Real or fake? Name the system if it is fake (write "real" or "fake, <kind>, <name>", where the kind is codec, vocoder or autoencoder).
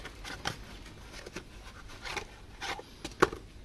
real